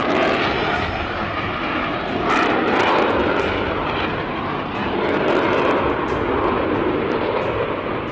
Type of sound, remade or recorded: recorded